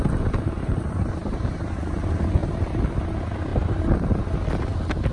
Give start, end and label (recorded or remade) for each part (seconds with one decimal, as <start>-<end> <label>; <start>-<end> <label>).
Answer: 0.0-1.2 recorded; 1.2-1.8 remade; 1.8-2.4 recorded; 2.4-2.9 remade; 2.9-5.1 recorded